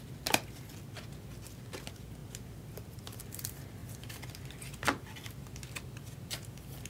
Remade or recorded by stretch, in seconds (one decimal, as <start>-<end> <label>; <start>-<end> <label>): 0.0-2.2 recorded; 2.2-3.2 remade; 3.2-3.8 recorded; 3.8-4.4 remade; 4.4-6.9 recorded